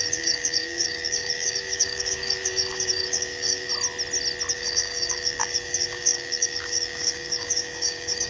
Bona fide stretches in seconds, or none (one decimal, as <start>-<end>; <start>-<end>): 3.7-4.5